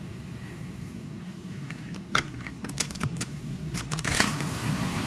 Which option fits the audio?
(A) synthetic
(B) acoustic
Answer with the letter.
A